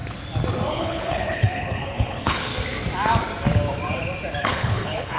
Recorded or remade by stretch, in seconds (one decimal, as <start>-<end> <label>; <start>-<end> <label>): 0.0-0.7 recorded; 0.7-2.5 remade; 2.5-4.4 recorded; 4.4-5.2 remade